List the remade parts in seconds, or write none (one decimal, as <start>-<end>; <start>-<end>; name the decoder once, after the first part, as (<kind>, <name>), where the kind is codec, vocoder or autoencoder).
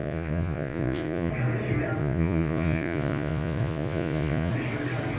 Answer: 0.0-1.3 (vocoder, Vocos); 2.0-4.5